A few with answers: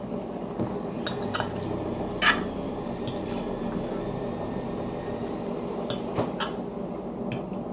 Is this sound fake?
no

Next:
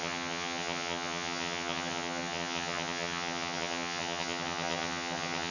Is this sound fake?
yes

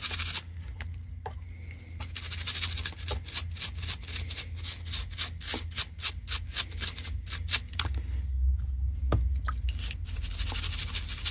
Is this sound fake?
no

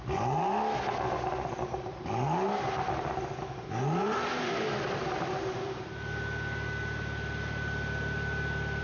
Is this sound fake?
no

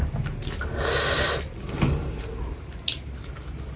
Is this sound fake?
no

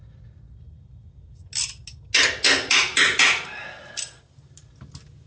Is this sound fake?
no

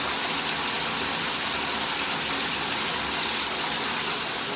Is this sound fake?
no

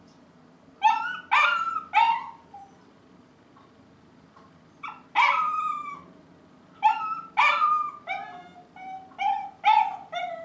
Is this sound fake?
no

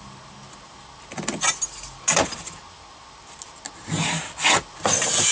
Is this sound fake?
no